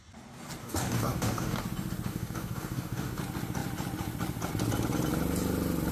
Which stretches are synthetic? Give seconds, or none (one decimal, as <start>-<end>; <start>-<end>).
0.6-1.6; 2.1-3.2